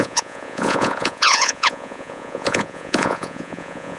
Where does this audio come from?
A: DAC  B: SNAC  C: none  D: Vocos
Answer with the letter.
D